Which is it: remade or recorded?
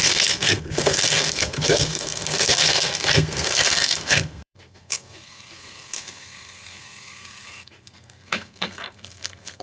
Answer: remade